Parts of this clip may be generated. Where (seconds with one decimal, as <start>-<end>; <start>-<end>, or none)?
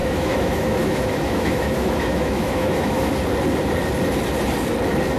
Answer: 0.0-3.1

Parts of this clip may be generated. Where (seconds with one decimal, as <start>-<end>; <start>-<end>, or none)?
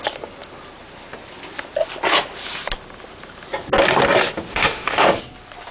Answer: 4.5-5.2